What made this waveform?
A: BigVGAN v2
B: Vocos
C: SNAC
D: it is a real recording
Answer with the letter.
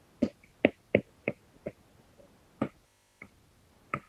D